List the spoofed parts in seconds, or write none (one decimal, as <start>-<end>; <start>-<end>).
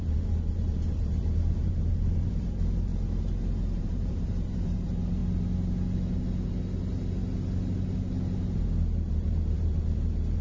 0.0-2.9; 3.8-5.2; 9.1-10.4